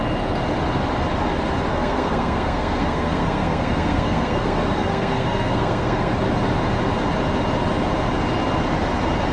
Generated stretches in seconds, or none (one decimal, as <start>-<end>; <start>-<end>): 1.7-6.1